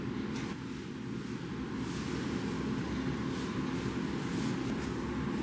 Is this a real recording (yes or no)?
yes